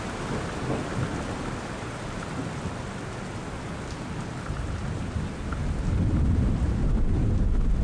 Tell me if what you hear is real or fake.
real